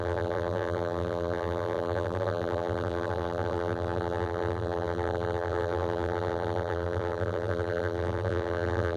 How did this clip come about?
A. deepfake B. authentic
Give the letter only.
A